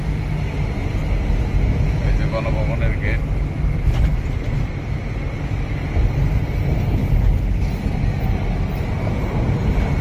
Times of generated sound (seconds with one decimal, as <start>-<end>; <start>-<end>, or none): none